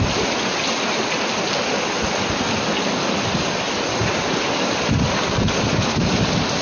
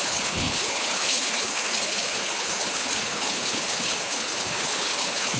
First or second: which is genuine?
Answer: first